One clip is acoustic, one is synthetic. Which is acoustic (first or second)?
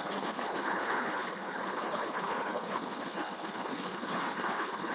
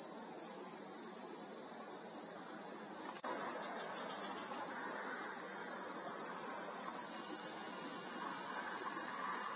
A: second